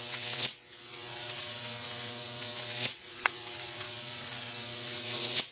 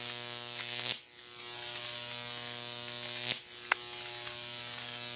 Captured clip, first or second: second